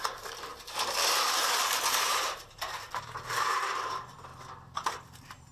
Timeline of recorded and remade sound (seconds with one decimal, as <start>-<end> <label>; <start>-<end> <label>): 0.0-4.3 remade; 4.3-4.9 recorded; 4.9-5.5 remade

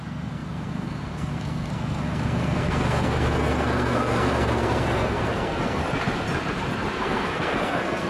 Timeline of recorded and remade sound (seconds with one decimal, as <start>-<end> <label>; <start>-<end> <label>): 0.0-5.8 remade; 5.8-6.9 recorded; 6.9-8.1 remade

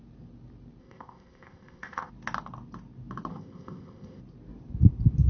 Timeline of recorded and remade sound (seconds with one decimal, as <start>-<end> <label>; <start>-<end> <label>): 0.0-0.8 recorded; 0.8-2.1 remade; 2.1-3.3 recorded; 3.3-4.2 remade; 4.2-5.3 recorded

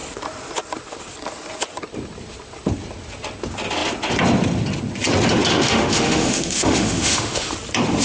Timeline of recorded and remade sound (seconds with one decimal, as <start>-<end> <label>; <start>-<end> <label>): 0.0-5.5 recorded; 5.5-7.5 remade; 7.5-8.0 recorded

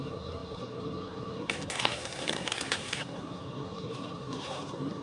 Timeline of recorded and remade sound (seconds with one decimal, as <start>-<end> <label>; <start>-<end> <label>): 0.0-5.0 remade

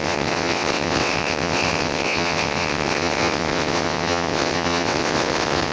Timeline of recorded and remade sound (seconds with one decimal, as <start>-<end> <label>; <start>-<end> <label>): 0.0-5.7 remade